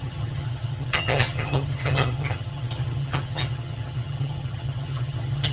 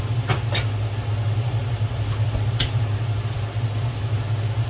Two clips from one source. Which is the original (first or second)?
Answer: second